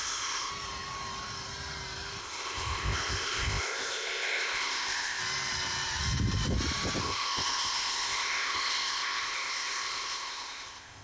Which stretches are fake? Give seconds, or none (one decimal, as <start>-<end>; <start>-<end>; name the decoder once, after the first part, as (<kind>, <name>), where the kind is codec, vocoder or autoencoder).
0.0-0.5 (codec, ZipCodec); 2.2-5.2; 7.0-11.0